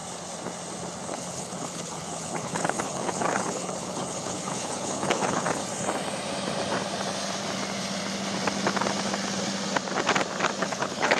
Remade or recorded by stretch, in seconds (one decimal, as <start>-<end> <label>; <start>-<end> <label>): 0.0-1.1 recorded; 1.1-5.6 remade; 5.6-10.6 recorded; 10.6-11.2 remade